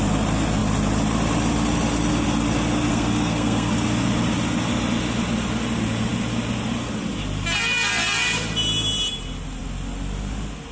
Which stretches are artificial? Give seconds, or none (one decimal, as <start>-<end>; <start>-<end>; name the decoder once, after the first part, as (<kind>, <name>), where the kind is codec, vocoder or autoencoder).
2.9-3.7 (codec, SNAC)